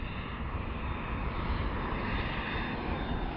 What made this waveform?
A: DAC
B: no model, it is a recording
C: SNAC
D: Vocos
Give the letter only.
B